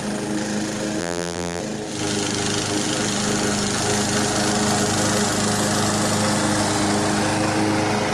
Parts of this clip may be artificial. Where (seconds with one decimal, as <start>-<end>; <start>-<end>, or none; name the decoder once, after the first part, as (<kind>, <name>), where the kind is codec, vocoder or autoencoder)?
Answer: 1.0-1.6 (vocoder, BigVGAN v2)